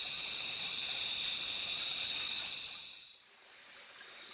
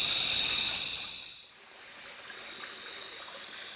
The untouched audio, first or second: second